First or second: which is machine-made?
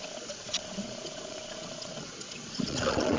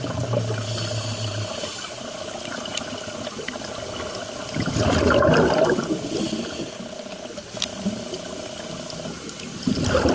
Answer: first